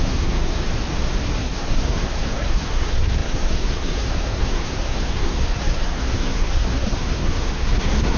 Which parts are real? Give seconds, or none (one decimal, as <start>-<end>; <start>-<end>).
0.6-1.4